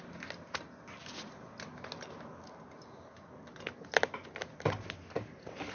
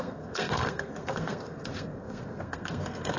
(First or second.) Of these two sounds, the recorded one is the first